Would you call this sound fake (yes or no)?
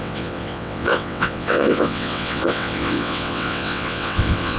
yes